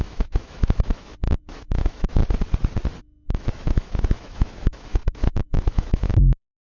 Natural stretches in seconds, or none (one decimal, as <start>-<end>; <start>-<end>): 2.2-3.0